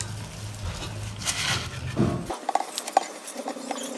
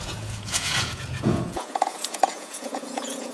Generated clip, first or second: second